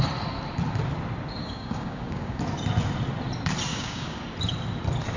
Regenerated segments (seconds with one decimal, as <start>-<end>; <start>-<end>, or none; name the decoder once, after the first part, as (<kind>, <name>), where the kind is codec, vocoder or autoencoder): 1.4-2.4 (codec, DAC); 3.7-4.2